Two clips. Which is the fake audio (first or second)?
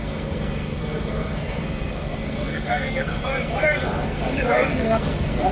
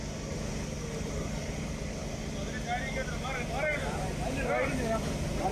first